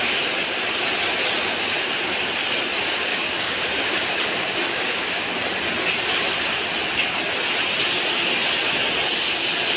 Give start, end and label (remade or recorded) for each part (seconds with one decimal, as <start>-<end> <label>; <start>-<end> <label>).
0.0-3.1 recorded; 3.1-5.3 remade; 5.3-9.8 recorded